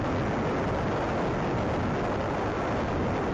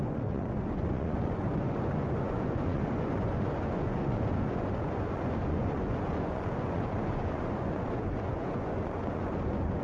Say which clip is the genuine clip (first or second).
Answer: first